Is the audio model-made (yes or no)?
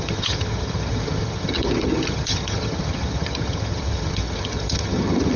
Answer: yes